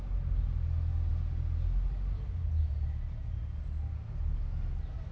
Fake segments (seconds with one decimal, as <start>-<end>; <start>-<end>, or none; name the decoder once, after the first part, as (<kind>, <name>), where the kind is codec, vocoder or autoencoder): none